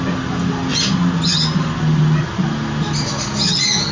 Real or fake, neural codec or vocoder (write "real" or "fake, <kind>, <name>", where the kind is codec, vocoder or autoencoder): real